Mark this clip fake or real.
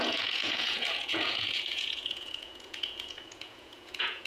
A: fake